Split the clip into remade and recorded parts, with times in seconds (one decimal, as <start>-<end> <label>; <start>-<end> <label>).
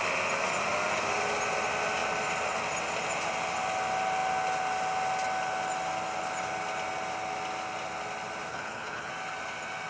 0.0-8.5 recorded; 8.5-9.1 remade; 9.1-9.9 recorded